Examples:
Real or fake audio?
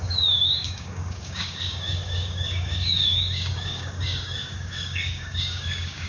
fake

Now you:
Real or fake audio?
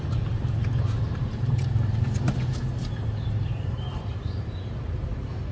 fake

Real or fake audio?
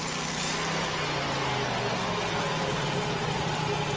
real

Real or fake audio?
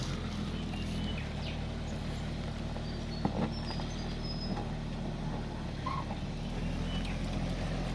real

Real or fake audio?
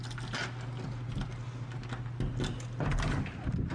real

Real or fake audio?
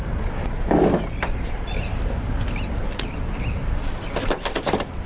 real